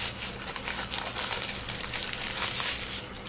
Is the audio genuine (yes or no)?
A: yes